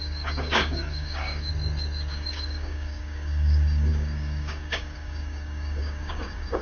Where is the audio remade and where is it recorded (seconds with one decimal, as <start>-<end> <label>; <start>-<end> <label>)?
0.0-1.5 remade; 1.5-2.1 recorded; 2.1-6.6 remade